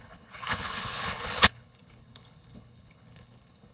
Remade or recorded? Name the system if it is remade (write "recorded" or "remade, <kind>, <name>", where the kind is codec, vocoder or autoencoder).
remade, codec, HILCodec